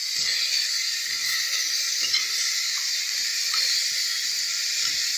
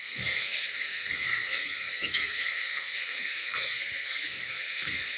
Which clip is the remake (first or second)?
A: second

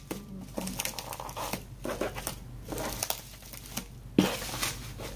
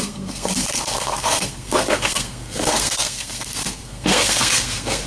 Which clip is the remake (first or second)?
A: second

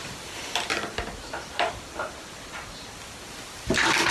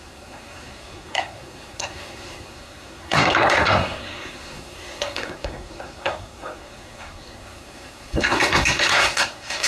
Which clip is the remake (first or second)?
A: second